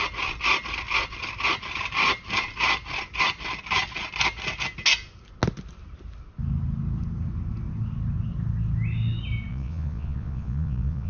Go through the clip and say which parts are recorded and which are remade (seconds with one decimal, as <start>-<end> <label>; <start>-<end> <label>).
0.0-9.5 recorded; 9.5-11.1 remade